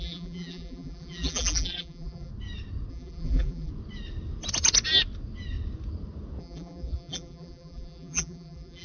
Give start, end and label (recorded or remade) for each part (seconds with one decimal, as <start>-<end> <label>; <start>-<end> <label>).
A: 0.0-2.3 remade; 2.3-2.9 recorded; 2.9-3.7 remade; 3.7-6.4 recorded; 6.4-8.8 remade